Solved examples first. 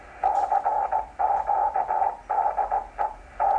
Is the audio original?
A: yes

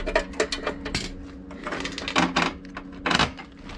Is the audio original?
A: yes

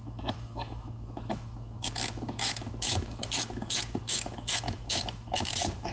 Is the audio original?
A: no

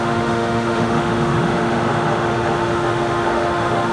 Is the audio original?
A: no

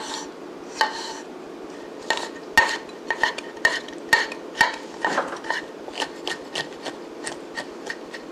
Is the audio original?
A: yes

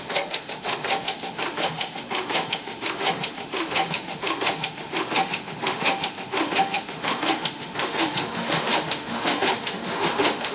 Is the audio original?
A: no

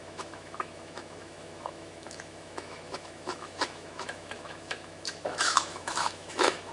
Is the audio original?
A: no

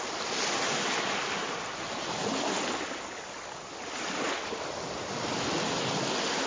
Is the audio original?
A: yes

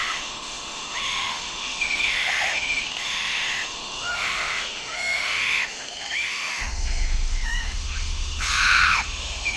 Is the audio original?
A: no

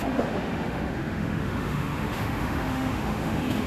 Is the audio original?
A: no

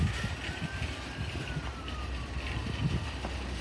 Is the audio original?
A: yes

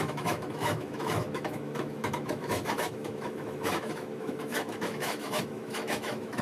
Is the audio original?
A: no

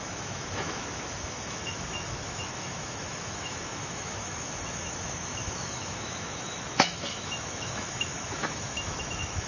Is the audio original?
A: no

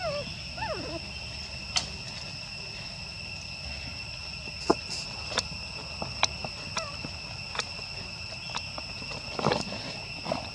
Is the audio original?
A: yes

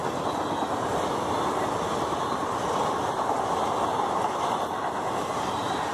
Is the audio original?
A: yes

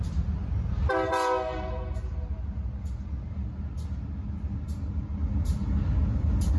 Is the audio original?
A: yes